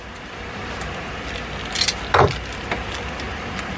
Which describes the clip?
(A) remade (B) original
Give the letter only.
B